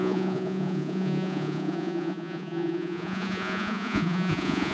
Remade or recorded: remade